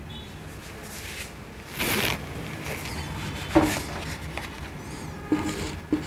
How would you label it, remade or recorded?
recorded